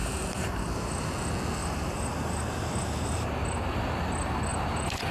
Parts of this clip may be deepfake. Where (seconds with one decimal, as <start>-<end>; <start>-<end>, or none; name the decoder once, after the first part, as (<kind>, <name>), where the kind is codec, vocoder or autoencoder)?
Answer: 0.0-1.1 (vocoder, BigVGAN v2); 1.6-3.4